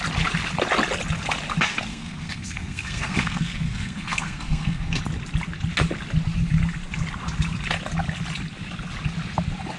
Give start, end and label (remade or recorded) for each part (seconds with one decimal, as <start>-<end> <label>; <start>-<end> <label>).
0.0-1.9 recorded; 1.9-5.0 remade; 5.0-9.8 recorded